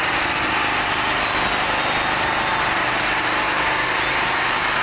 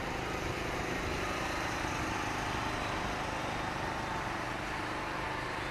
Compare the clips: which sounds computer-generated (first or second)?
second